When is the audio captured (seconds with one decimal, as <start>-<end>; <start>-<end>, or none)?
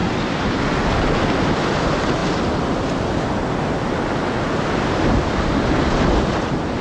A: 0.0-6.8